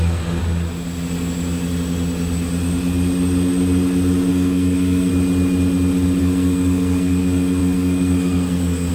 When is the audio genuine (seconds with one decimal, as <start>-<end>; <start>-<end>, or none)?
0.4-4.3; 5.1-6.2